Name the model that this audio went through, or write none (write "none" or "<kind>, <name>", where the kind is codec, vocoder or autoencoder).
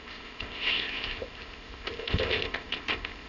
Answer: codec, ZipCodec